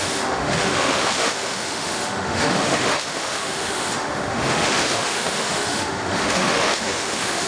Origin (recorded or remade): remade